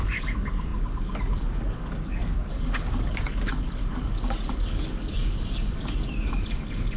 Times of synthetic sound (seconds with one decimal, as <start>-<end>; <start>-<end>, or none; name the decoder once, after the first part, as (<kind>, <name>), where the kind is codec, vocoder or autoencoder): 0.0-7.0 (codec, DAC)